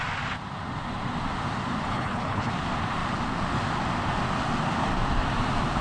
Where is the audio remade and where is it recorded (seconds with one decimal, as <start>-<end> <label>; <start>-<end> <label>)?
0.0-1.9 recorded; 1.9-2.5 remade; 2.5-5.8 recorded